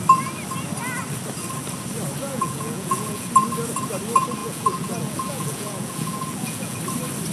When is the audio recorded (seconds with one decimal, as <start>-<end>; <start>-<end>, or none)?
0.0-2.2; 3.3-4.4; 6.8-7.3